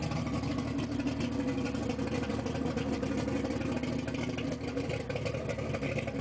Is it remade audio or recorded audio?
recorded